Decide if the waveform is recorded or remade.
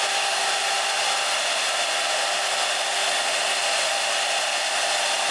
recorded